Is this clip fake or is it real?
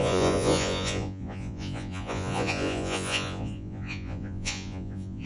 fake